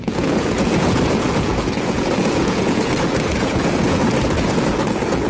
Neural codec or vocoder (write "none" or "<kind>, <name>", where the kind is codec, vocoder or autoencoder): vocoder, Vocos